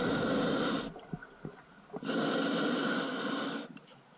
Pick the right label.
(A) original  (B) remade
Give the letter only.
A